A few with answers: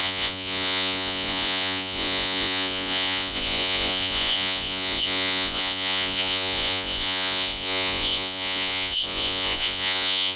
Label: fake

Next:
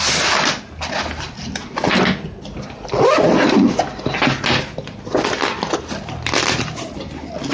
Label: real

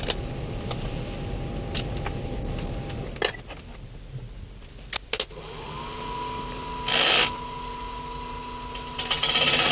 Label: real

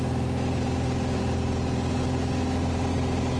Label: real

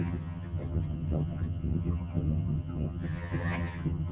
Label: fake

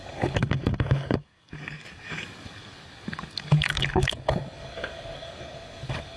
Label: fake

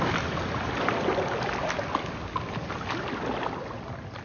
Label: real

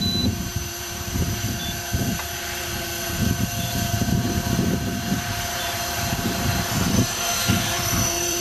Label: fake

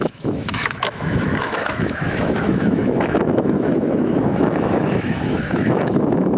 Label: fake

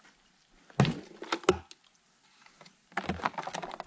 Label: real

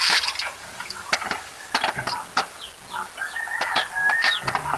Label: real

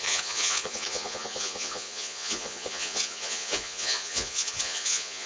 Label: fake